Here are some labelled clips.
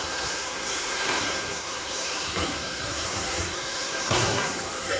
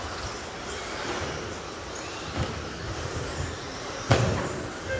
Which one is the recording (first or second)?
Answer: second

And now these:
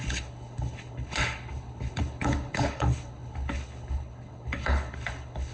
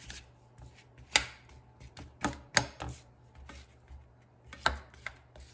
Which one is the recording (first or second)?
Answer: second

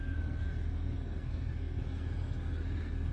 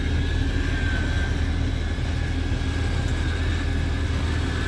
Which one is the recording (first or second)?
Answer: second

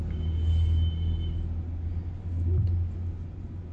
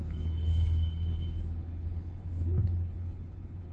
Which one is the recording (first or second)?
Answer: first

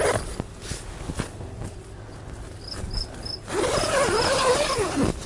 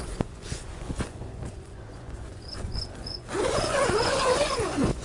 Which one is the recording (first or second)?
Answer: first